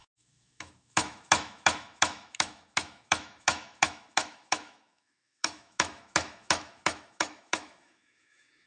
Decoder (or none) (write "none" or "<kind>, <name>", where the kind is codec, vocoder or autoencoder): autoencoder, DAC-VAE